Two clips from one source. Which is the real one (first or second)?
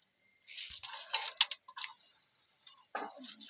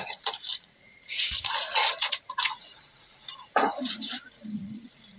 first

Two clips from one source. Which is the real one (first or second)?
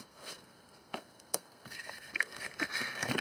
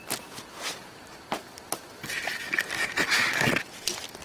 second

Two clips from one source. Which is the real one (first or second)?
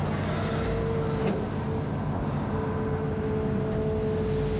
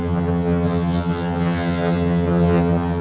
first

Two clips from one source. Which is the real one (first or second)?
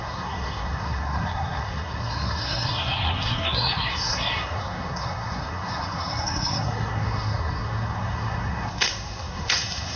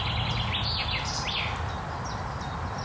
second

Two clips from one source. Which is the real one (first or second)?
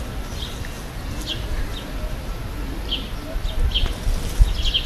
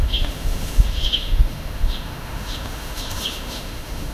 first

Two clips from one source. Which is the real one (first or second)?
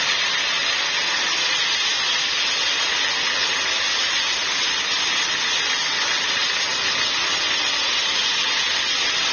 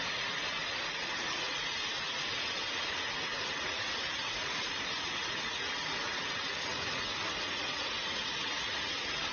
first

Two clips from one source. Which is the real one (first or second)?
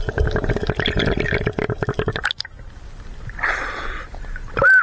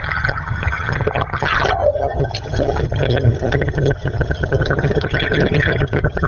first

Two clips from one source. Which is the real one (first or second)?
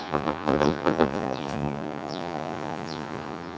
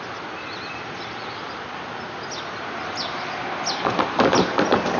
second